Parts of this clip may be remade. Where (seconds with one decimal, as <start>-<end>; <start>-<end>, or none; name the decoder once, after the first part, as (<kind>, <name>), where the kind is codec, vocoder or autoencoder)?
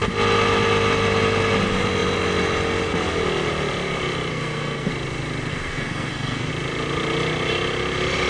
4.3-4.9 (codec, SNAC); 5.5-6.5